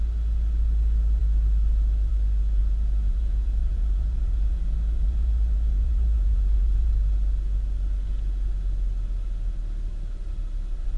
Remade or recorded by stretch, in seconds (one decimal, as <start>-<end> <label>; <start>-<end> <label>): 0.0-2.6 recorded; 2.6-6.9 remade; 6.9-11.0 recorded